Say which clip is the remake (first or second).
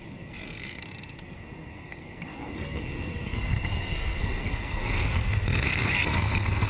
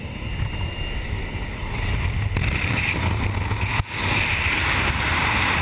first